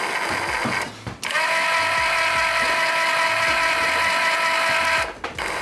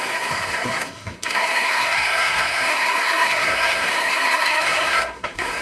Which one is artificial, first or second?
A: second